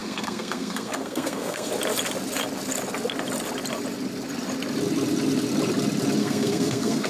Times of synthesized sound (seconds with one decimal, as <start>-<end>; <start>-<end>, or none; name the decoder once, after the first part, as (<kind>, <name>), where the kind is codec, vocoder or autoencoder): 0.0-1.7 (codec, SNAC); 6.2-7.1